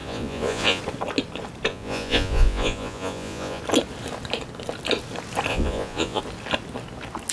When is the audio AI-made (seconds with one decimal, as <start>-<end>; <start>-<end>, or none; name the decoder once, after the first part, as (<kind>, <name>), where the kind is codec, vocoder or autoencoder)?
0.0-0.8 (vocoder, Vocos); 1.7-3.6; 5.5-6.2